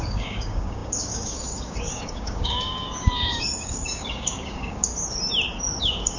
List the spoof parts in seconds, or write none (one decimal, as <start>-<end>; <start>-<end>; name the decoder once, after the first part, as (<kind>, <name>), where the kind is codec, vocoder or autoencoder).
0.0-4.9 (codec, DAC); 5.8-6.2